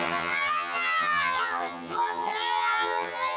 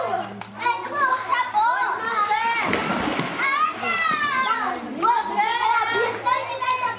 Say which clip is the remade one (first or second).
first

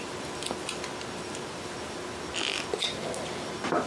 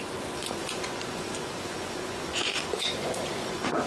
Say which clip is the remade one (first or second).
second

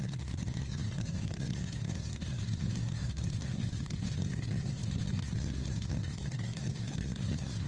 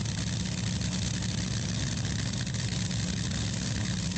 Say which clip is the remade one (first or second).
first